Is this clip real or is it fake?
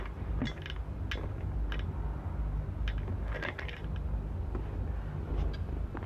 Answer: real